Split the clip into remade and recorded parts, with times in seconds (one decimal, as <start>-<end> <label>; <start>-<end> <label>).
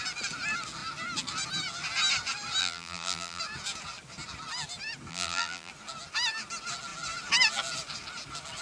0.0-2.6 recorded; 2.6-3.4 remade; 3.4-5.1 recorded; 5.1-5.7 remade; 5.7-8.6 recorded